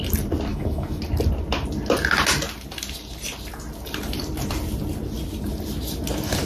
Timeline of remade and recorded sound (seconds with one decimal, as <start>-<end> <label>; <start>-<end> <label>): 0.0-0.5 recorded; 0.5-1.0 remade; 1.0-6.5 recorded